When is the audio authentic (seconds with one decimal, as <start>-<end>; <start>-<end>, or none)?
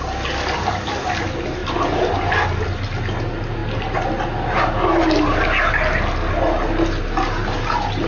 0.0-8.1